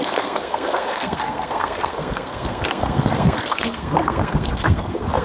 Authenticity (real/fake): fake